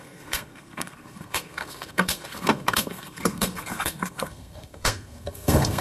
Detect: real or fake fake